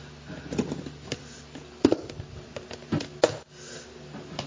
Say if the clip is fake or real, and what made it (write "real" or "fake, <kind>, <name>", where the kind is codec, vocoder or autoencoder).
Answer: real